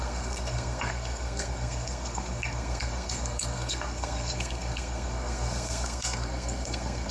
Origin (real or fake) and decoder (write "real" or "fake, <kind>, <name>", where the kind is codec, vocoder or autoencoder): fake, codec, SNAC